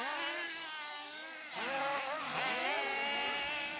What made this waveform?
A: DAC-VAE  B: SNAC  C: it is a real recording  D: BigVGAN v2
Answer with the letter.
C